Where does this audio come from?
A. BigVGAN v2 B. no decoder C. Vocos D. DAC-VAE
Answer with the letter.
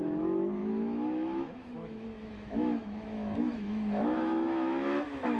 D